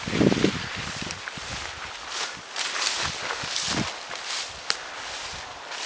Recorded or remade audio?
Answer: recorded